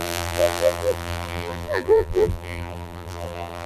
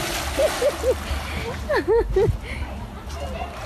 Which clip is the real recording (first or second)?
second